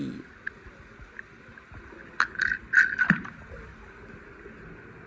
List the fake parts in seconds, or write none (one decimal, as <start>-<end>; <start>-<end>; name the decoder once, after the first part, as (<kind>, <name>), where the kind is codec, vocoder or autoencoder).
none